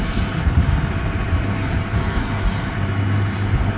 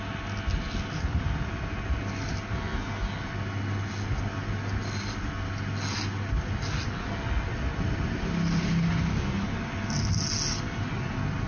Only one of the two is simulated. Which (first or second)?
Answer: first